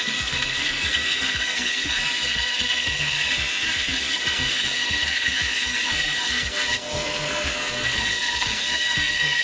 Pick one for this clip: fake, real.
fake